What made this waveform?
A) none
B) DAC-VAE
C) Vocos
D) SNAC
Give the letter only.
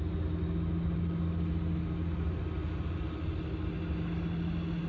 A